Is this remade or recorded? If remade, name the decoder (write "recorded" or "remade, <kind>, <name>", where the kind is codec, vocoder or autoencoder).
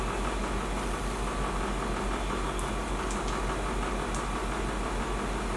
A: recorded